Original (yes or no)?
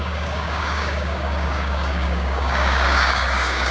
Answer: no